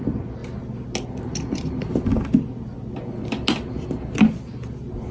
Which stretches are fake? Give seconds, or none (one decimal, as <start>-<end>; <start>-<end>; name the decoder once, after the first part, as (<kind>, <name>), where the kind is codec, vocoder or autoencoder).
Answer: none